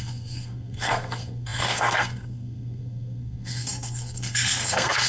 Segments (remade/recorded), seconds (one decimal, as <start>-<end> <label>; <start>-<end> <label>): 0.0-5.1 remade